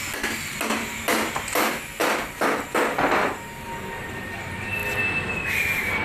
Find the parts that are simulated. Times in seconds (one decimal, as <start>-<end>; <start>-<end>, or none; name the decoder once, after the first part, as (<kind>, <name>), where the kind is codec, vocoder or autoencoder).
none